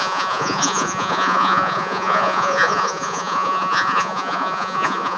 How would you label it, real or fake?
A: fake